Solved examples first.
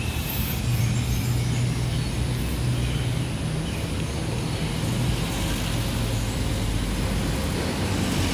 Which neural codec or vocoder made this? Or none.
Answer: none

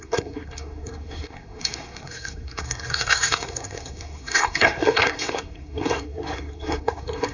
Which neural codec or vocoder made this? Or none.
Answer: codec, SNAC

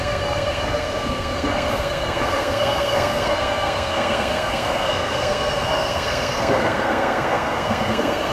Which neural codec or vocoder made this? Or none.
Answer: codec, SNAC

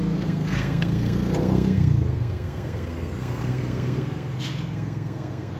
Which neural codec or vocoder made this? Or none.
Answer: codec, SNAC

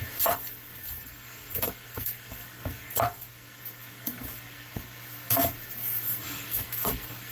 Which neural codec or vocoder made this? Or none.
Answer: codec, SNAC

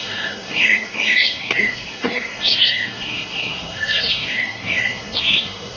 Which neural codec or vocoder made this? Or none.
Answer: codec, SNAC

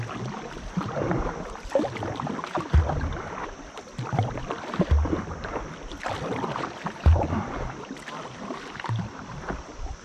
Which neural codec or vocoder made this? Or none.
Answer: none